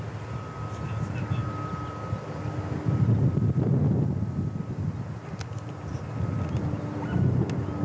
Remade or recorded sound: recorded